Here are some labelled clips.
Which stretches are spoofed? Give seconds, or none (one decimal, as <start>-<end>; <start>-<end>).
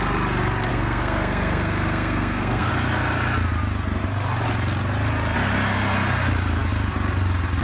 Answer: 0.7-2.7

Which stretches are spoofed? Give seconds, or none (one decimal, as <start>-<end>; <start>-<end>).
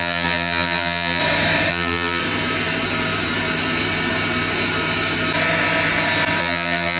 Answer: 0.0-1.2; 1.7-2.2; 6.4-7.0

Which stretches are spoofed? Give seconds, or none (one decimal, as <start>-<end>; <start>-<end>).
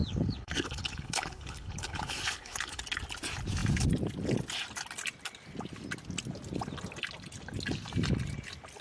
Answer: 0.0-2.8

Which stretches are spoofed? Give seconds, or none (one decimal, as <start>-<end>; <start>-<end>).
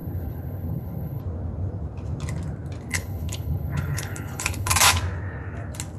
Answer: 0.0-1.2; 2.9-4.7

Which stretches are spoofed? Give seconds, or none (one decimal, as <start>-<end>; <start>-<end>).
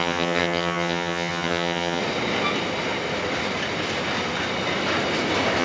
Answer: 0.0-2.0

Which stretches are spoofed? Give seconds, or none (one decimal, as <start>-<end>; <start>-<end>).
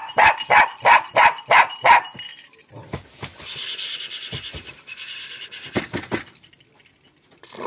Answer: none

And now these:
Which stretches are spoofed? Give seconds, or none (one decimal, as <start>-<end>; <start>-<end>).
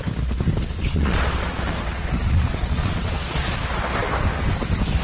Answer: 0.6-3.6